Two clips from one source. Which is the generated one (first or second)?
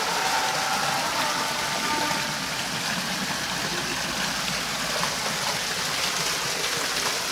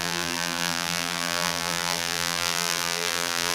second